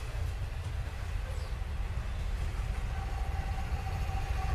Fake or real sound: real